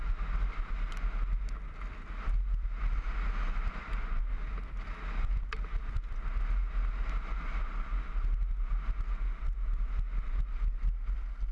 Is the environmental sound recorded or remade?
recorded